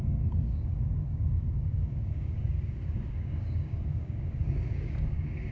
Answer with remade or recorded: remade